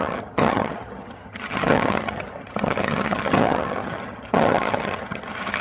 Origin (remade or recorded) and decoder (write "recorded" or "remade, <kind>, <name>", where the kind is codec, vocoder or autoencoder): remade, vocoder, HiFi-GAN